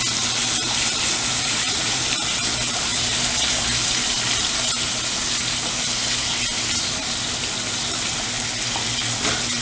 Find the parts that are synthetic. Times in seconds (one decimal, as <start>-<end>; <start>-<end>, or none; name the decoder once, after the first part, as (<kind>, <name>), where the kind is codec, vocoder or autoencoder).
1.3-2.0 (vocoder, Vocos)